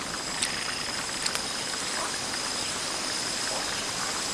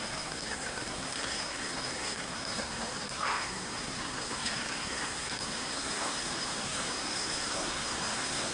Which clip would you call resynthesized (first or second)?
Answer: second